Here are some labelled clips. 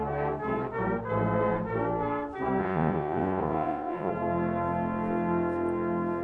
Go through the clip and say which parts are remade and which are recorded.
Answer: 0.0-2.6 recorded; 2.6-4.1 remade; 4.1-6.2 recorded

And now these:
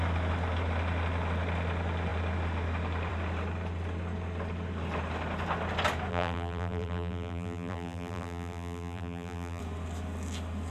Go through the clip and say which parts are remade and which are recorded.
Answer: 0.0-6.1 recorded; 6.1-9.6 remade; 9.6-10.7 recorded